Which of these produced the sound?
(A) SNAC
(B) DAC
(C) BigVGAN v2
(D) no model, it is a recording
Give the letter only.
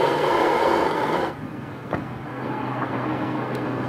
A